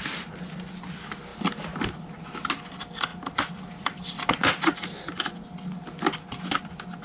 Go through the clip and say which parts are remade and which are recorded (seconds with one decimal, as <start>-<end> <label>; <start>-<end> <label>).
0.0-1.3 recorded; 1.3-2.3 remade; 2.3-3.1 recorded; 3.1-4.1 remade; 4.1-7.0 recorded